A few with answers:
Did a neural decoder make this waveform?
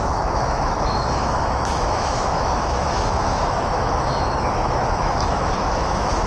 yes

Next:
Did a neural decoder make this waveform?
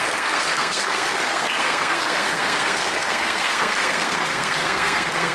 yes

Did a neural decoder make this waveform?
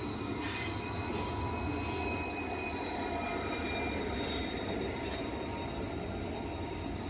no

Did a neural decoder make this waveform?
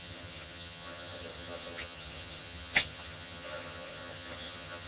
yes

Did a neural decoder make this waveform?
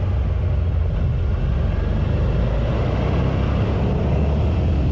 no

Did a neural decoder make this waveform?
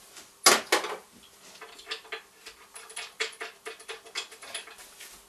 no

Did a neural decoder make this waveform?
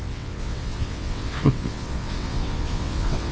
yes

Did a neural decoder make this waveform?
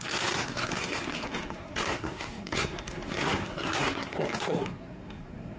yes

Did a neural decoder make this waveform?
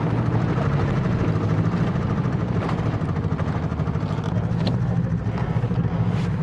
no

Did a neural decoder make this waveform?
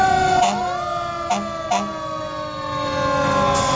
no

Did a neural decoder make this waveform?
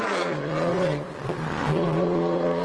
yes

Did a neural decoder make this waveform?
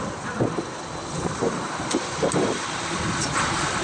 yes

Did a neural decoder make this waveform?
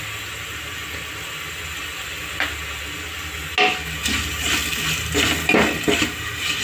no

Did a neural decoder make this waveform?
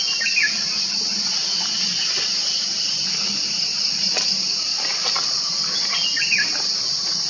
no